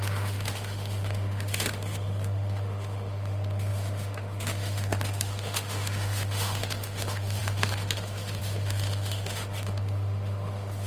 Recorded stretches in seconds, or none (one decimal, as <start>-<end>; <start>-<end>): none